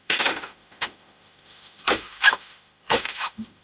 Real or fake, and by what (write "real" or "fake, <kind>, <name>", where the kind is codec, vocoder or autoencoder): fake, autoencoder, DAC-VAE